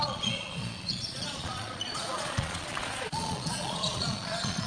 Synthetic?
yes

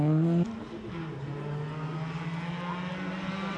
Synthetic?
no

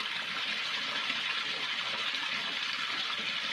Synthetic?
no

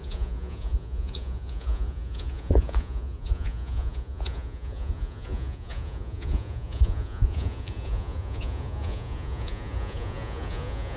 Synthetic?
yes